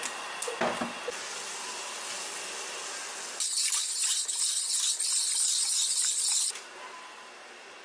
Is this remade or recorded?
recorded